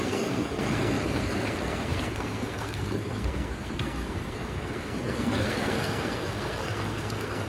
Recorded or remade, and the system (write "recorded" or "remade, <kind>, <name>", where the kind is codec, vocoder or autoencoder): remade, codec, SNAC